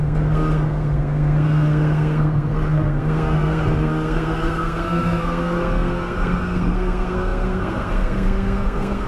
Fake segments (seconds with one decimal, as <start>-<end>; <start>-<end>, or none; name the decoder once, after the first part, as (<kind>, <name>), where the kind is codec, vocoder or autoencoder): 0.0-9.1 (codec, SNAC)

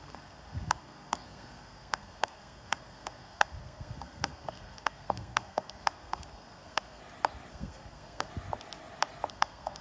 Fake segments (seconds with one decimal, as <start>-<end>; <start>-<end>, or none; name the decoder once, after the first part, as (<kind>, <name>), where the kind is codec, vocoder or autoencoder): 0.0-7.0 (codec, SNAC); 7.5-8.3; 9.3-9.8

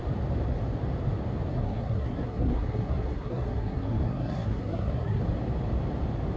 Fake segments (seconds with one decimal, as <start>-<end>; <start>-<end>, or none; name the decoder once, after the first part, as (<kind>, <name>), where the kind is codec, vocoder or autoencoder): 1.5-5.2 (codec, SNAC)

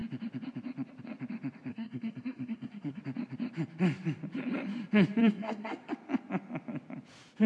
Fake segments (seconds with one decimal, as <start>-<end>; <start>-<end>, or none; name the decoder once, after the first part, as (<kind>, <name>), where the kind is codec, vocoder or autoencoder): 1.7-3.0 (codec, SNAC); 5.2-5.9